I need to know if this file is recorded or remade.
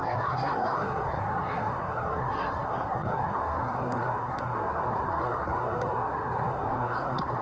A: remade